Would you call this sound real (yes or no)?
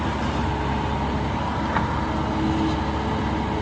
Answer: yes